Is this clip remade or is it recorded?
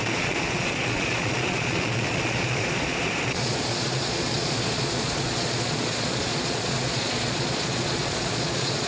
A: remade